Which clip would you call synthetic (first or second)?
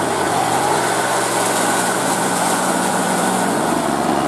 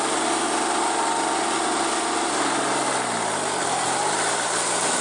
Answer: first